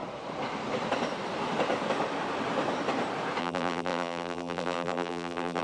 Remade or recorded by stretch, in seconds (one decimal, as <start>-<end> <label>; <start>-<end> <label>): 0.0-3.4 recorded; 3.4-5.6 remade